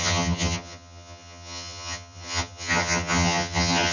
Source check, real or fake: fake